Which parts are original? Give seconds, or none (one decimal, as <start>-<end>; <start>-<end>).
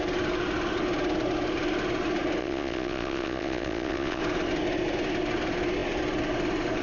0.0-2.4; 4.2-6.8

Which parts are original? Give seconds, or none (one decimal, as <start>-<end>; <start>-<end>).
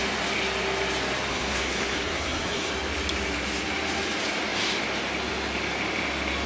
0.0-1.3; 2.7-6.5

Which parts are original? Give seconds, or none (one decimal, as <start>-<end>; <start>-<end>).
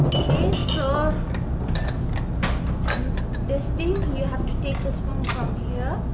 0.0-6.1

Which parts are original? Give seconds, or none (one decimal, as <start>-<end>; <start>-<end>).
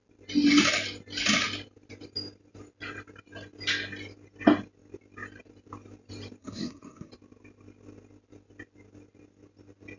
0.0-6.4; 7.1-10.0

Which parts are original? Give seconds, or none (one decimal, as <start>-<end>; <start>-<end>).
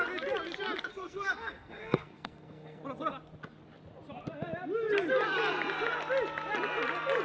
0.0-0.9; 2.8-7.2